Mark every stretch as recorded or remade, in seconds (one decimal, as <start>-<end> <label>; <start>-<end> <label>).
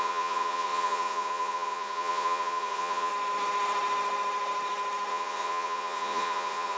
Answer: 0.0-3.1 remade; 3.1-5.1 recorded; 5.1-6.8 remade